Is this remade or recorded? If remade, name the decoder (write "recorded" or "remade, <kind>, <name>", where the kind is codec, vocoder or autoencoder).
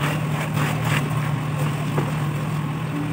recorded